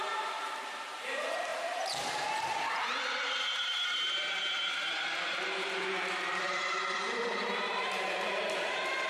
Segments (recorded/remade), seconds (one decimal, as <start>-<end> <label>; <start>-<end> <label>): 0.0-9.1 remade